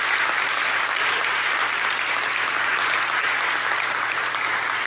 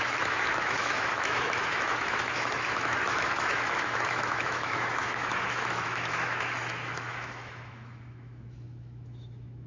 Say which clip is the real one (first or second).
first